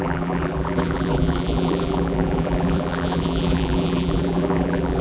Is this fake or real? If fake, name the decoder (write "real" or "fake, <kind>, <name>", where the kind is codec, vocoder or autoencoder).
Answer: fake, vocoder, BigVGAN v2